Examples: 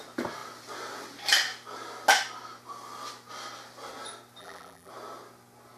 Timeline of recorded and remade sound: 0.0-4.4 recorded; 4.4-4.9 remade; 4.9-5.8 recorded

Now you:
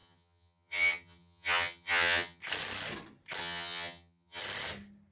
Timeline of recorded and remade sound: 0.0-2.4 remade; 2.4-3.4 recorded; 3.4-4.4 remade; 4.4-5.1 recorded